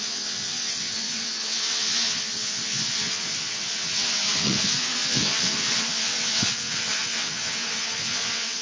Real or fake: fake